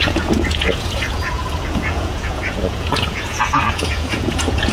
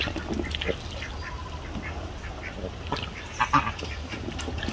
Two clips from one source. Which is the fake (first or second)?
first